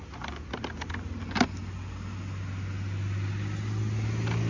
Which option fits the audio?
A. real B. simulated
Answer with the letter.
A